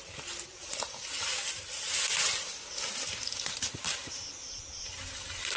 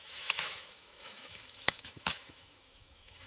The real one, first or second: first